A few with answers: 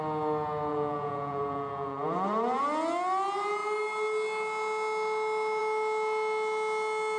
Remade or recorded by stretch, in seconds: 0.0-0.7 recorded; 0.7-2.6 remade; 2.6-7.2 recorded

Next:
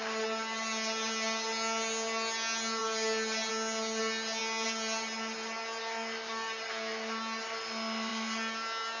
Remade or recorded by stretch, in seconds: 0.0-9.0 recorded